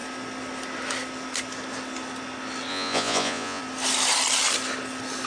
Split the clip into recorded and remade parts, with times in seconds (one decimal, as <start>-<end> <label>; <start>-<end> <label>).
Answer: 0.0-2.7 recorded; 2.7-3.6 remade; 3.6-5.3 recorded